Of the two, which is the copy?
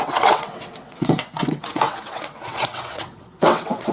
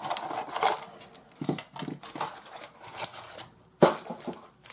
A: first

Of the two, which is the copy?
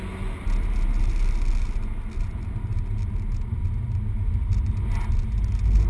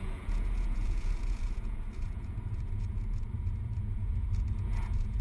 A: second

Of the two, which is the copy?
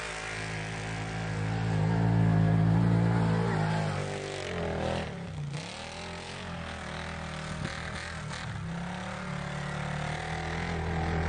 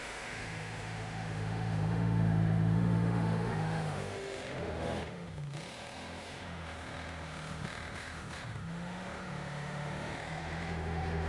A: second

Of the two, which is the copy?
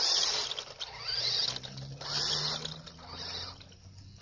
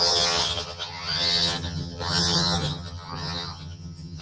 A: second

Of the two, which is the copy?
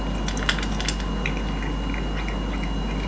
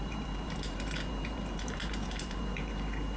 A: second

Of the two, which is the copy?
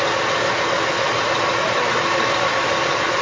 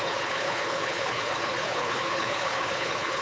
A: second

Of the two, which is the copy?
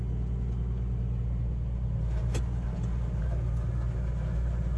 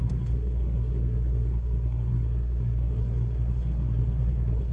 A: second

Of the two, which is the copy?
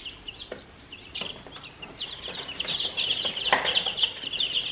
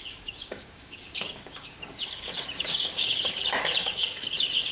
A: second